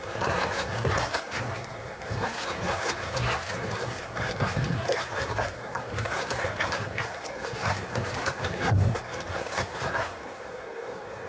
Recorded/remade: remade